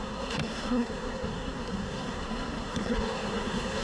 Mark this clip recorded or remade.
remade